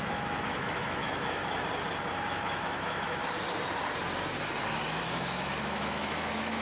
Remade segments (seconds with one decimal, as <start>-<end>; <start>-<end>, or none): 0.0-1.4; 2.3-3.2; 5.0-6.6